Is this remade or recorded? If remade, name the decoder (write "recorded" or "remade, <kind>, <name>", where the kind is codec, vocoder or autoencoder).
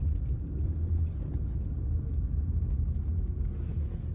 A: recorded